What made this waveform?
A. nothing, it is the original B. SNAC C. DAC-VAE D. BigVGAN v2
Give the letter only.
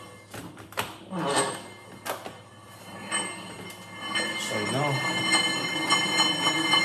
A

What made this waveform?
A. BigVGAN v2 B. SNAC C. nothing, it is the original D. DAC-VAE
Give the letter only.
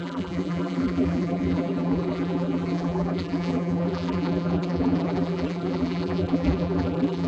A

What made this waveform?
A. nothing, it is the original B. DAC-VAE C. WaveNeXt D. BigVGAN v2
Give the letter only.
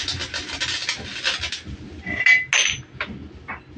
A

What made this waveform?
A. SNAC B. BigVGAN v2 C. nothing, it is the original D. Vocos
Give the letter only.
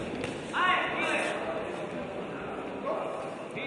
C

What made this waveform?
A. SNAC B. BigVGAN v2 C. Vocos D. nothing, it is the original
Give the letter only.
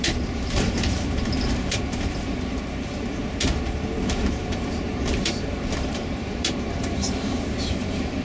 B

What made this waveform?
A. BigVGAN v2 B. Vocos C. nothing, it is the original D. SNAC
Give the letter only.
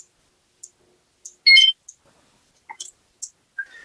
C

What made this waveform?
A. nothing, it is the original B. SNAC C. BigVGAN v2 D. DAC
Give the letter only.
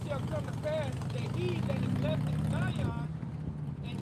A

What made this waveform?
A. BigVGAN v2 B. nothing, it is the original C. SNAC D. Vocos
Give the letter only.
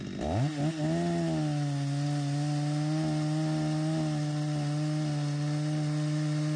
B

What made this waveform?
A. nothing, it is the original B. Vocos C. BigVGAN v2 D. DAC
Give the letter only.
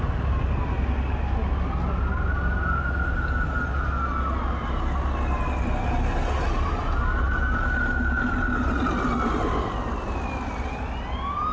A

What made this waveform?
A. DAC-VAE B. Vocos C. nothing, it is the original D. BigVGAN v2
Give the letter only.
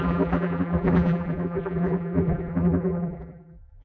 D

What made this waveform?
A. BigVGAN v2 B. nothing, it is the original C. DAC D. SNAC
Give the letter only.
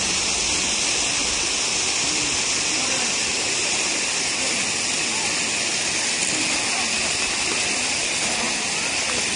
B